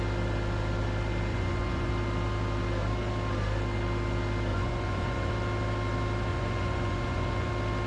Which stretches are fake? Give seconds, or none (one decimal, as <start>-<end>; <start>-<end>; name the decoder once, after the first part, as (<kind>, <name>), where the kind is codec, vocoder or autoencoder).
1.3-1.9 (vocoder, Vocos); 4.5-5.3; 6.3-7.5